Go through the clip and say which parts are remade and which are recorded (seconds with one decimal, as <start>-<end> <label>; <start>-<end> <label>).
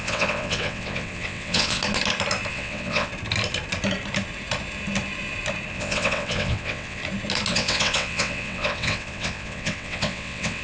0.0-1.8 remade; 1.8-2.5 recorded; 2.5-3.1 remade; 3.1-5.7 recorded; 5.7-7.0 remade; 7.0-7.5 recorded; 7.5-10.6 remade